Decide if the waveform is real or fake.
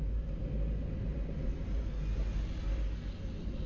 real